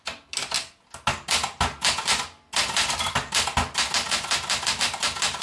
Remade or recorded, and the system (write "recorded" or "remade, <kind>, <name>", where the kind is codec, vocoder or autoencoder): recorded